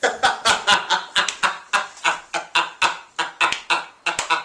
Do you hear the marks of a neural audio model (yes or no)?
no